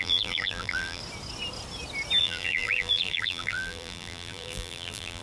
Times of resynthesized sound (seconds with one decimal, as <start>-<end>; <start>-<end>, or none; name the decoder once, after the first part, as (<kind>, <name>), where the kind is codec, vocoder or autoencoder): 0.0-1.0 (vocoder, BigVGAN v2); 2.2-5.2